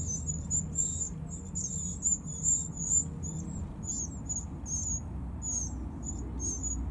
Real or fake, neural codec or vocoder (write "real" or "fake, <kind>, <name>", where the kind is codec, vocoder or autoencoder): real